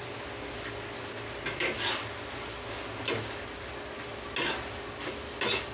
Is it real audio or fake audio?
real